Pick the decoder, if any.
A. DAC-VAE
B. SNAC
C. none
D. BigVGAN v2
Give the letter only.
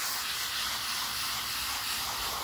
C